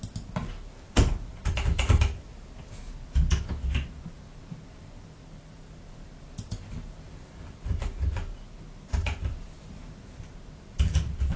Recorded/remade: recorded